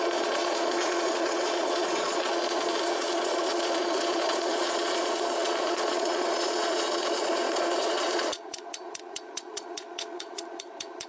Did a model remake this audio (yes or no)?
yes